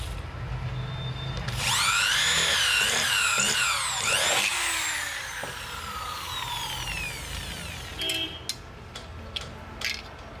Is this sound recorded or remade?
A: recorded